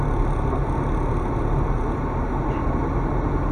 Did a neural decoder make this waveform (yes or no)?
no